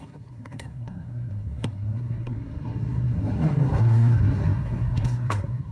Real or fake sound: fake